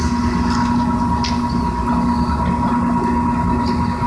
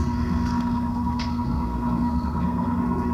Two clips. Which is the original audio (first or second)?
first